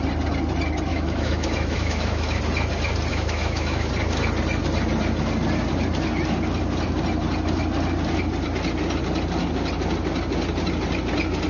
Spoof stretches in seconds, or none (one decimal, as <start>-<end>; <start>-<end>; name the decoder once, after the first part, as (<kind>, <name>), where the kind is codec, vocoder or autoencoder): 0.9-2.4 (autoencoder, DAC-VAE); 3.1-3.9